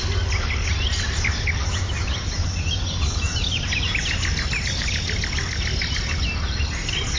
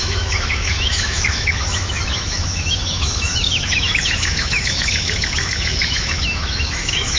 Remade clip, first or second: second